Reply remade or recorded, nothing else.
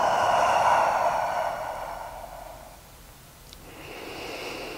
recorded